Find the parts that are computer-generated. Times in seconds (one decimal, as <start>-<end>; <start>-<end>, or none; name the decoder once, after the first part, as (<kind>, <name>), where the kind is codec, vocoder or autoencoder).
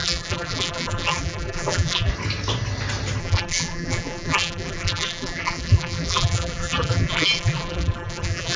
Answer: 0.0-2.1 (vocoder, BigVGAN v2); 3.2-8.6